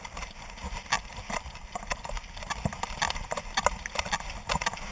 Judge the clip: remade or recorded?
recorded